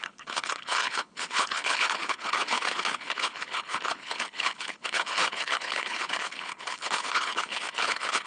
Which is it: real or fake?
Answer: fake